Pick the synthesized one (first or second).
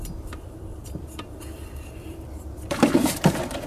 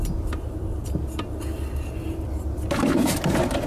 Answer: first